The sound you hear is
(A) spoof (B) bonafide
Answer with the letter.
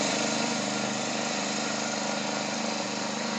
A